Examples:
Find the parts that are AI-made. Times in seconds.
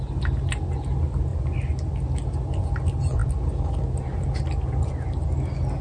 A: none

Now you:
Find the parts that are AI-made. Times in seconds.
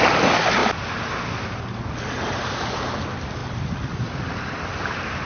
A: 0.6-1.6 (vocoder, BigVGAN v2)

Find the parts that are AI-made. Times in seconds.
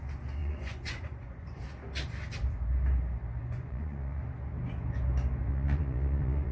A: 0.4-1.6 (vocoder, Vocos); 3.4-4.2; 5.5-6.5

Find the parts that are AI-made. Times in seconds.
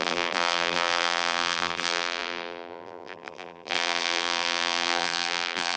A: 0.0-5.8 (vocoder, BigVGAN v2)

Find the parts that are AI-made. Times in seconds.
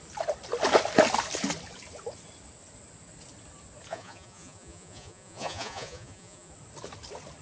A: 3.9-6.5 (vocoder, Vocos)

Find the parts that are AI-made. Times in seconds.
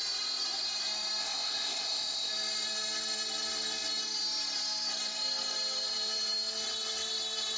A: 1.2-2.3 (codec, ZipCodec)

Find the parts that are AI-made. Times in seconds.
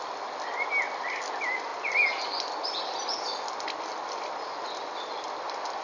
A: none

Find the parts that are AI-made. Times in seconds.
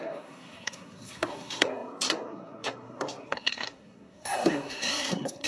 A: 0.0-5.5 (codec, SNAC)